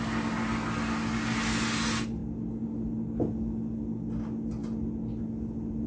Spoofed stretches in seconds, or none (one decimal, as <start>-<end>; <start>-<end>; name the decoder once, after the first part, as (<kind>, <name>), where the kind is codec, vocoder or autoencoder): none